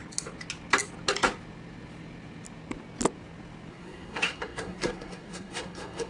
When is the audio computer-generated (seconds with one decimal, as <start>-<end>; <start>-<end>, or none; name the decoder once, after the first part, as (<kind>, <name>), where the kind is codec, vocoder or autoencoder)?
3.7-6.1 (codec, SNAC)